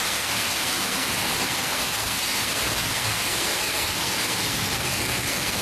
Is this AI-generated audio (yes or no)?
yes